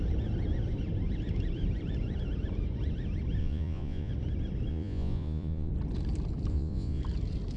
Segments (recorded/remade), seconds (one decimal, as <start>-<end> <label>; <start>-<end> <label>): 0.0-3.4 recorded; 3.4-4.1 remade; 4.1-4.7 recorded; 4.7-5.7 remade; 5.7-6.5 recorded; 6.5-7.0 remade; 7.0-7.6 recorded